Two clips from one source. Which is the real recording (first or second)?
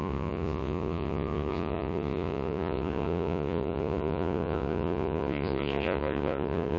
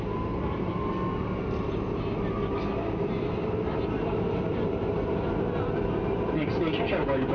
second